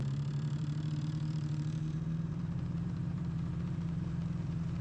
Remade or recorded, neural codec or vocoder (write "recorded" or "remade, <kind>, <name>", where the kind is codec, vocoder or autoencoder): remade, vocoder, BigVGAN v2